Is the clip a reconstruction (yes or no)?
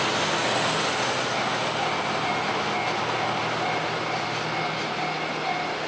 no